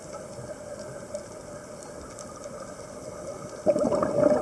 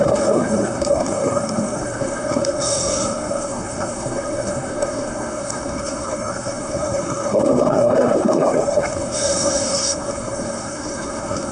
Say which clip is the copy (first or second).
second